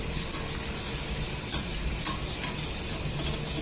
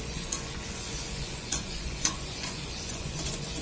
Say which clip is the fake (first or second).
second